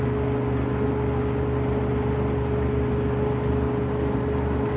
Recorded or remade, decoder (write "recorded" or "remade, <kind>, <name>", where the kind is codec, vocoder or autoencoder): recorded